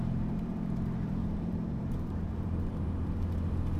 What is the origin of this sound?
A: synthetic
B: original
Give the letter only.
A